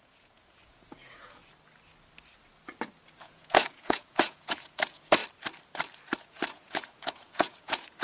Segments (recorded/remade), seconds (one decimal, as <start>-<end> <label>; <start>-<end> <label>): 0.0-1.4 remade; 1.4-3.2 recorded; 3.2-5.2 remade; 5.2-6.2 recorded; 6.2-8.0 remade

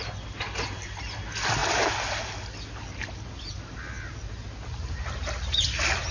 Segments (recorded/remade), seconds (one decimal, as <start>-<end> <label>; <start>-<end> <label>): 0.0-6.1 recorded

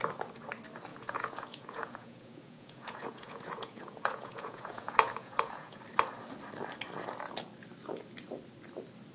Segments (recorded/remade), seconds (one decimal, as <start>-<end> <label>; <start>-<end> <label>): 0.0-0.9 recorded; 0.9-5.8 remade; 5.8-9.1 recorded